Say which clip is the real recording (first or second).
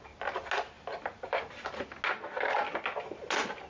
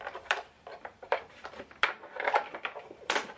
first